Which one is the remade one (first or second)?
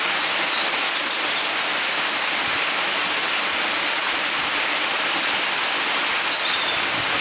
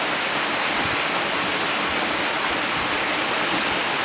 first